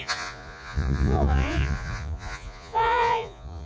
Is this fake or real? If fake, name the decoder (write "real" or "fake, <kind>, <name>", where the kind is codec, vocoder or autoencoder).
fake, vocoder, Vocos